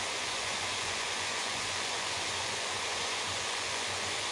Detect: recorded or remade remade